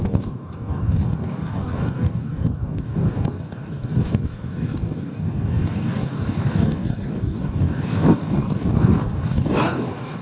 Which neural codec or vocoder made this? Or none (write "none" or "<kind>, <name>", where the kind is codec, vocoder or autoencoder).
codec, DAC